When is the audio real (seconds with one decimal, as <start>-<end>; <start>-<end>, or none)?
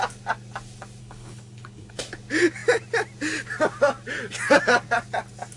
0.0-1.0; 1.9-5.6